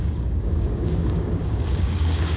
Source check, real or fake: fake